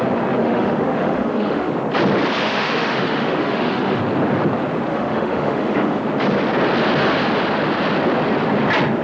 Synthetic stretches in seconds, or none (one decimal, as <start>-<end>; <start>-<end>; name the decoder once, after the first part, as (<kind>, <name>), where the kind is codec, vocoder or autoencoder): 0.4-1.7 (autoencoder, DAC-VAE); 2.4-4.0; 4.9-6.0